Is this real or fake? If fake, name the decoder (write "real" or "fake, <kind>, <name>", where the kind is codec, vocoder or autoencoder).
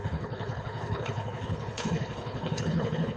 fake, codec, HILCodec